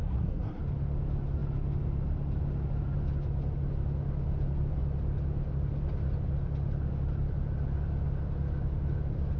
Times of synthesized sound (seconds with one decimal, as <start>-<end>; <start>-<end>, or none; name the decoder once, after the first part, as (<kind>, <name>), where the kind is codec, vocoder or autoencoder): 0.0-0.6 (codec, SNAC)